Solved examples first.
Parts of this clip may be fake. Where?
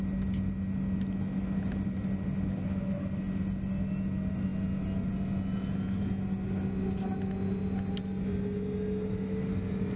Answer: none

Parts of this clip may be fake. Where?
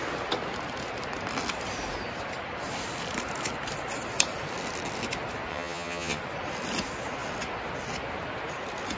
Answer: 5.5-6.2